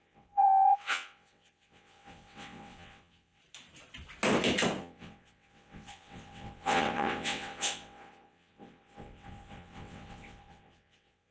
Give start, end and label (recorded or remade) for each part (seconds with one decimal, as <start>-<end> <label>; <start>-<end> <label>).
0.0-3.4 remade; 3.4-4.8 recorded; 4.8-11.3 remade